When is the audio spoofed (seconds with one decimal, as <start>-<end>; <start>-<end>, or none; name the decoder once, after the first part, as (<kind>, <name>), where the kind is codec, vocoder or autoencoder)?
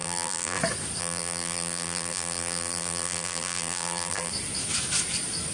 0.0-0.6 (vocoder, BigVGAN v2); 1.0-4.3